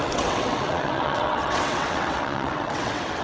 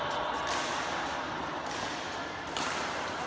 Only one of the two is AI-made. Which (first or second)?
first